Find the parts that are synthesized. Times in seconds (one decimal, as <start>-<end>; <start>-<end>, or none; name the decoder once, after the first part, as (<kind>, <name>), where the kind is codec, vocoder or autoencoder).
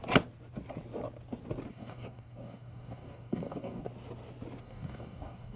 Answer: 1.7-3.9 (codec, DAC); 4.6-5.6